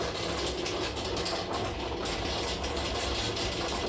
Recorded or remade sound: recorded